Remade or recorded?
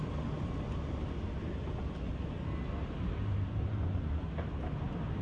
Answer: recorded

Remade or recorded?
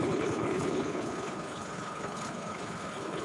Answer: remade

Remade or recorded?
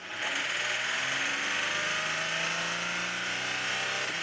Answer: recorded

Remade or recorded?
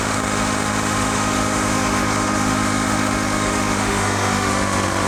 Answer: remade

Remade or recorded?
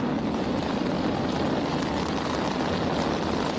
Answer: recorded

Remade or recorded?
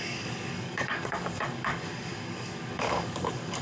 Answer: remade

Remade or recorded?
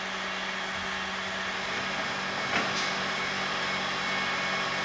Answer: recorded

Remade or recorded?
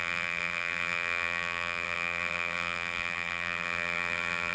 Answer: remade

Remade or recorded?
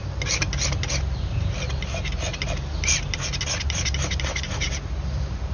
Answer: recorded